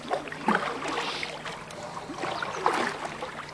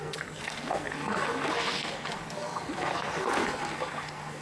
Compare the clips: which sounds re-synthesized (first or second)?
second